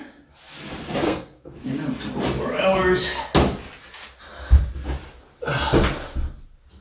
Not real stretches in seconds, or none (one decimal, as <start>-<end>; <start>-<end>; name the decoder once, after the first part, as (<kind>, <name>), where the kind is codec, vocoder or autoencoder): 1.0-1.6 (codec, SNAC)